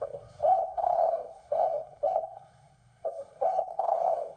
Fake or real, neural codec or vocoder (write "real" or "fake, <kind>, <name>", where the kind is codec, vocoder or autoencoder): fake, codec, SNAC